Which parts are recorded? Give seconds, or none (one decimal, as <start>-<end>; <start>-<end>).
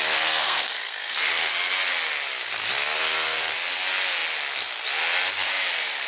0.0-0.4; 1.2-6.1